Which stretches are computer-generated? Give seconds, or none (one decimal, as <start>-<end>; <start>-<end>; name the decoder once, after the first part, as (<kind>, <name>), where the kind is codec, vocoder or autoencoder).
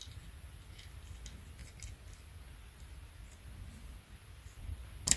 none